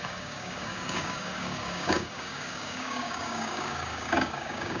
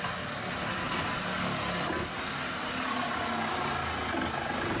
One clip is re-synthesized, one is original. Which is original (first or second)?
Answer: second